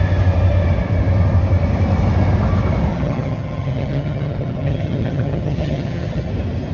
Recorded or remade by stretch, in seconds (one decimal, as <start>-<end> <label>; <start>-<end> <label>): 0.0-2.9 recorded; 2.9-6.3 remade; 6.3-6.7 recorded